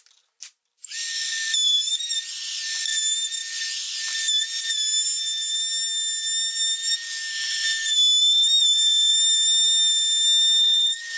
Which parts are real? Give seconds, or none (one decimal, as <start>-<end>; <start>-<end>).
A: 0.0-10.6